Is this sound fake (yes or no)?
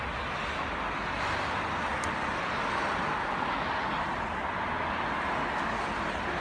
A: no